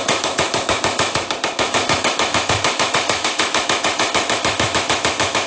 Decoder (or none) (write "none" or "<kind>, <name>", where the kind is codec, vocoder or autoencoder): autoencoder, DAC-VAE